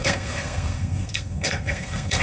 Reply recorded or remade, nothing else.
remade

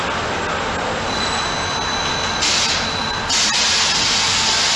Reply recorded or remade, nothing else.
recorded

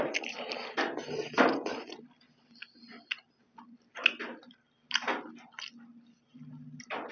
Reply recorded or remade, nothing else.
recorded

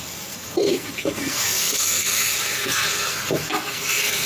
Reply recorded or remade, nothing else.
remade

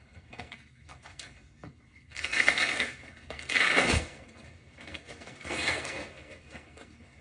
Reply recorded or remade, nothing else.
remade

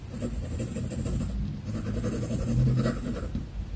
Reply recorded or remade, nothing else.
recorded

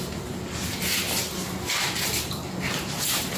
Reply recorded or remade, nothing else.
recorded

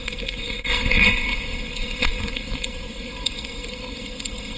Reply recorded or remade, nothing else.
remade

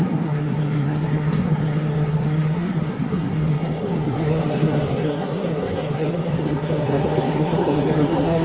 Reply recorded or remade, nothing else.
remade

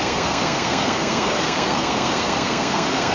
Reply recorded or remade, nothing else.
remade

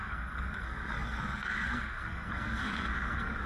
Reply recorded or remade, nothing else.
remade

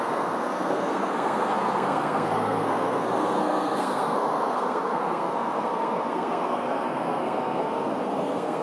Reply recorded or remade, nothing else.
remade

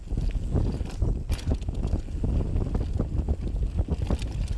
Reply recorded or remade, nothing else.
recorded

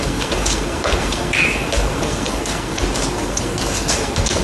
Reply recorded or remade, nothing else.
remade